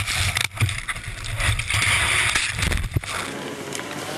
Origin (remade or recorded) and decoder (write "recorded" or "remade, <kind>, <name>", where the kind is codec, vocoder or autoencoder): recorded